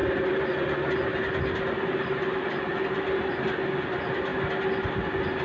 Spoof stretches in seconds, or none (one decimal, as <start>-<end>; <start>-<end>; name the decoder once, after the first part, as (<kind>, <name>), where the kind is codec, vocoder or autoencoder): none